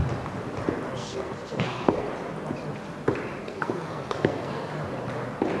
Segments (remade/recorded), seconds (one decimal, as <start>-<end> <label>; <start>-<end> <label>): 0.0-0.9 recorded; 0.9-2.1 remade; 2.1-3.4 recorded; 3.4-4.7 remade; 4.7-5.6 recorded